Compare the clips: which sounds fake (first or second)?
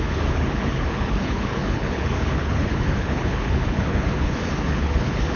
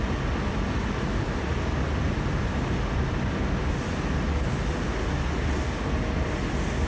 first